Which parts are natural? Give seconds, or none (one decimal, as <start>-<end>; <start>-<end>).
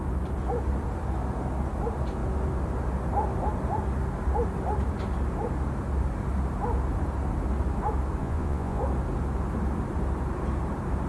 0.0-8.2; 8.8-11.1